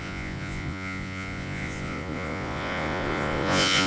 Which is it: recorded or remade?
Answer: remade